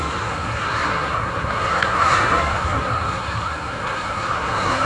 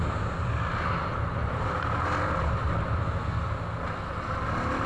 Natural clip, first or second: second